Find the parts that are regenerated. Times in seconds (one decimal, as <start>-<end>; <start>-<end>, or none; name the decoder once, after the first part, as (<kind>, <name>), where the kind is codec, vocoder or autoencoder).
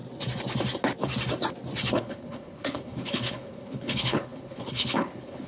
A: 1.9-5.5 (codec, HILCodec)